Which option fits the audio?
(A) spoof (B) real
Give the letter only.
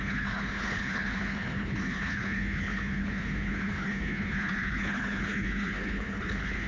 A